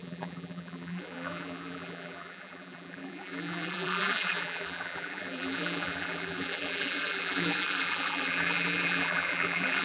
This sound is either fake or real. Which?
fake